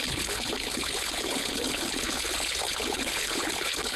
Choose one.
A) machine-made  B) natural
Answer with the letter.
A